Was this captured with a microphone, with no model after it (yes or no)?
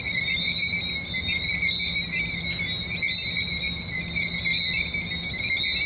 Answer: yes